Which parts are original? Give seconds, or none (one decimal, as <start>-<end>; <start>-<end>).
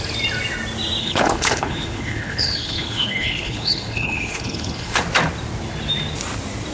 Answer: 0.0-1.0; 5.0-6.7